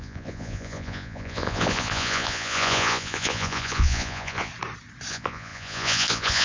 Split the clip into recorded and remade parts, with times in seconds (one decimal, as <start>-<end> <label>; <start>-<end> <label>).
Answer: 0.0-4.5 remade; 4.5-5.1 recorded; 5.1-6.4 remade